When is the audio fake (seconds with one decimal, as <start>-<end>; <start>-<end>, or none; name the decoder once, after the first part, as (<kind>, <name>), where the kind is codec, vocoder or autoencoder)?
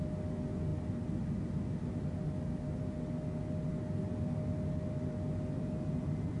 none